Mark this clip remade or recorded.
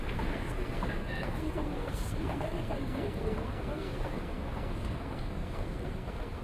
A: remade